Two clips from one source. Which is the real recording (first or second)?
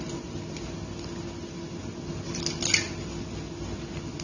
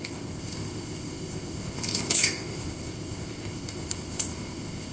first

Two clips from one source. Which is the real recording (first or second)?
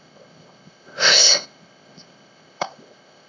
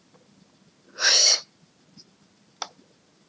second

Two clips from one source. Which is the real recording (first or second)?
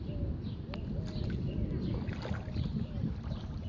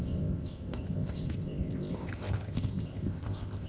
first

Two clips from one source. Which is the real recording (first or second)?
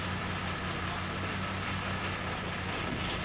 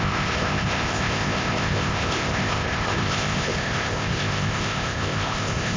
first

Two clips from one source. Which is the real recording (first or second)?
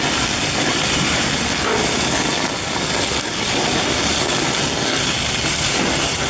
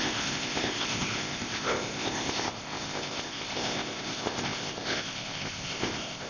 first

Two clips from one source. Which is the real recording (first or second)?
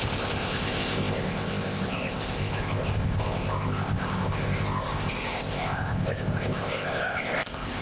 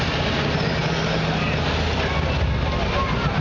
second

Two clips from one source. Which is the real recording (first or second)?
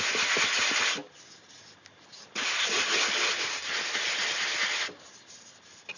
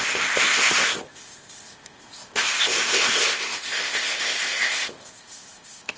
first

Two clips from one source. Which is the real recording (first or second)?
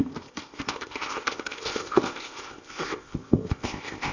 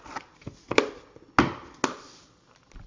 second